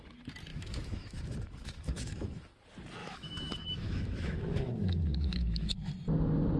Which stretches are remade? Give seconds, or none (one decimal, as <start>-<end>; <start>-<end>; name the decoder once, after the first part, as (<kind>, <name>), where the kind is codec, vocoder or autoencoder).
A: 0.5-2.5 (autoencoder, DAC-VAE); 3.0-5.9